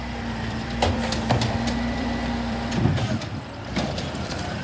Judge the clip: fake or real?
fake